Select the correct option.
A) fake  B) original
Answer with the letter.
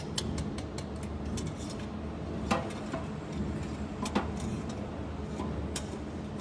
B